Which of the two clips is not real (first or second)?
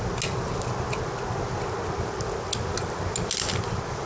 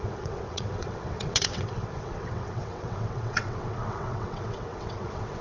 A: second